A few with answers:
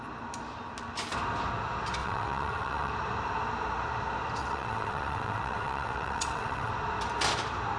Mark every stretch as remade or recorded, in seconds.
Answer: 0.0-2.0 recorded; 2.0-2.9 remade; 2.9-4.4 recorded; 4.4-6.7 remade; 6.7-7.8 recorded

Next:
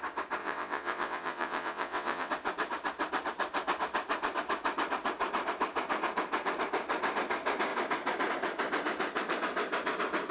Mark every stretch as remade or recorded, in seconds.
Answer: 0.0-0.4 recorded; 0.4-2.3 remade; 2.3-10.3 recorded

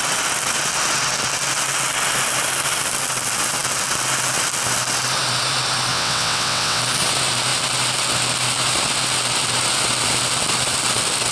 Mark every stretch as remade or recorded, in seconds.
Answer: 0.0-5.9 recorded; 5.9-6.8 remade; 6.8-11.3 recorded

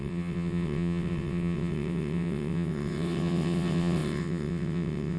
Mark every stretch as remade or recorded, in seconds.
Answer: 0.0-5.2 remade

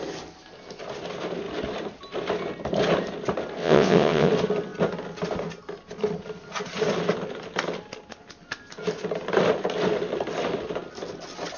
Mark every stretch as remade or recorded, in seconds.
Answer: 0.0-3.6 recorded; 3.6-4.3 remade; 4.3-11.6 recorded

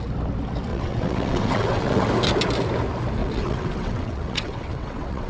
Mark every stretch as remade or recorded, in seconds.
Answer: 0.0-0.7 recorded; 0.7-2.1 remade; 2.1-3.2 recorded; 3.2-5.3 remade

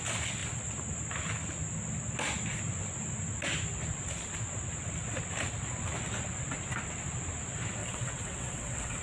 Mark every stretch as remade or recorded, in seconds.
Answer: 0.0-7.8 recorded; 7.8-9.0 remade

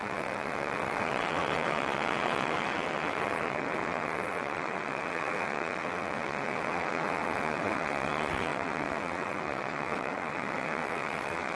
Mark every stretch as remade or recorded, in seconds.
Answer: 0.0-11.5 remade